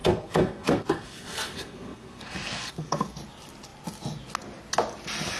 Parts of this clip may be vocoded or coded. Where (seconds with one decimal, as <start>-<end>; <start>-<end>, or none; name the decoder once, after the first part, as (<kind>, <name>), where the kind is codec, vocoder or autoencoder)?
0.0-3.2 (codec, SNAC)